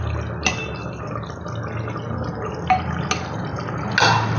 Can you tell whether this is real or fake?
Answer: real